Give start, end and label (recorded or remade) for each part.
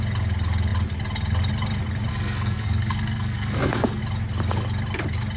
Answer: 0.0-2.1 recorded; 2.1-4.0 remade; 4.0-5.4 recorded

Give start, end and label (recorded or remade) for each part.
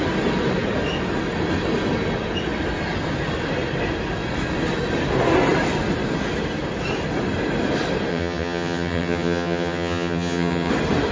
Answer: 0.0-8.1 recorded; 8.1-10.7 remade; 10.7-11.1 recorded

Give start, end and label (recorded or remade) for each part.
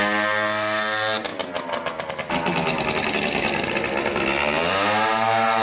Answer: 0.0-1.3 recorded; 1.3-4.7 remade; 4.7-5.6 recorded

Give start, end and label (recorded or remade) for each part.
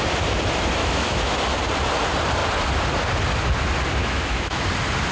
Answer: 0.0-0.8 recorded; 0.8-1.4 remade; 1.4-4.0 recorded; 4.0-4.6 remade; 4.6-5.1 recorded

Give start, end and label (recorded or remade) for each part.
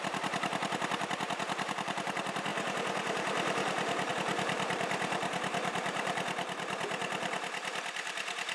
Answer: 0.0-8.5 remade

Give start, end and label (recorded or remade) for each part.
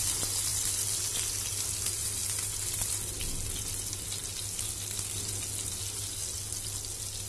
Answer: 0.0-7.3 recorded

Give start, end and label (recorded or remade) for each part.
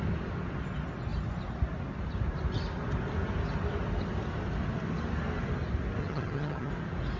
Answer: 0.0-6.0 recorded; 6.0-6.7 remade; 6.7-7.2 recorded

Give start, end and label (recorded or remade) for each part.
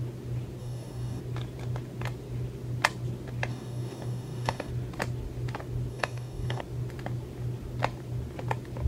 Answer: 0.0-0.6 recorded; 0.6-1.2 remade; 1.2-3.5 recorded; 3.5-4.7 remade; 4.7-5.9 recorded; 5.9-6.6 remade; 6.6-8.9 recorded